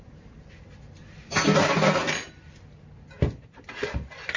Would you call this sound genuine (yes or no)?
yes